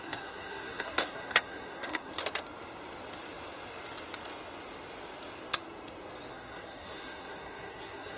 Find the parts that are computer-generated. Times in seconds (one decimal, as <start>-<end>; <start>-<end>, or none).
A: 0.0-2.1; 6.3-8.2